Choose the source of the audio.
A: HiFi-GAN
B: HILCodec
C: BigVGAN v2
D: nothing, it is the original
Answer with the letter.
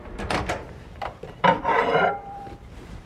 C